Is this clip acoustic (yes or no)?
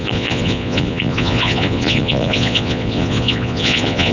no